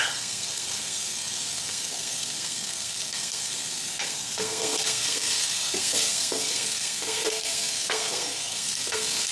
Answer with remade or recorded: remade